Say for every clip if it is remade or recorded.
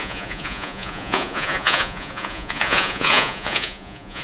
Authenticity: remade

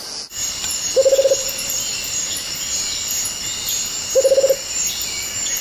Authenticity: recorded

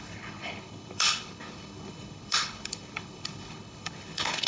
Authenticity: remade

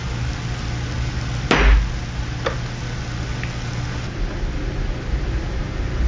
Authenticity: recorded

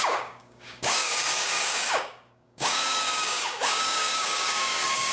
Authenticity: remade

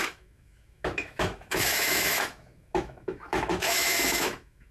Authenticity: remade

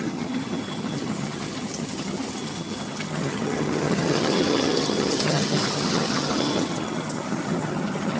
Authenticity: remade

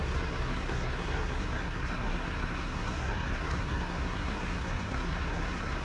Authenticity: remade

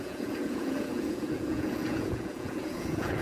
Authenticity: remade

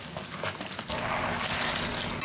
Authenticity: recorded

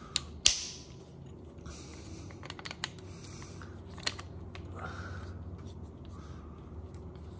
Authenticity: recorded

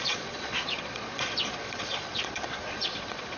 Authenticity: remade